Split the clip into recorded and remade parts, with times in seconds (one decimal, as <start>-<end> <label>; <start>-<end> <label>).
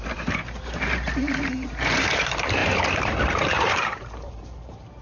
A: 0.0-5.0 remade